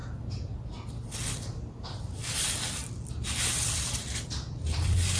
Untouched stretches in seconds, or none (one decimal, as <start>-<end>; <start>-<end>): 0.0-3.1